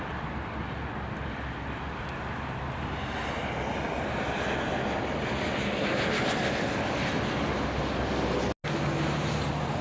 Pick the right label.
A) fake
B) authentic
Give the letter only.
B